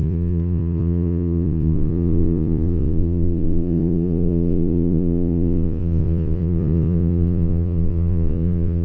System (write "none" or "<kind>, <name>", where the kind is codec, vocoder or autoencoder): vocoder, Vocos